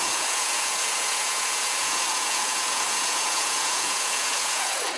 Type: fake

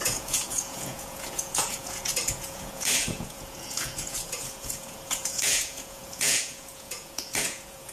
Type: fake